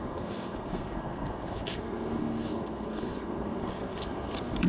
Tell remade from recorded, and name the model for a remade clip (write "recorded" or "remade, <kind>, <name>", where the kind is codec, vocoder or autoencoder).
remade, codec, SNAC